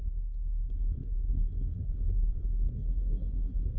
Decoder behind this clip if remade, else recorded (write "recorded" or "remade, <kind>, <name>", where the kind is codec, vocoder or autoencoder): remade, codec, SNAC